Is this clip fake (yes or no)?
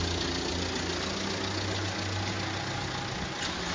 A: no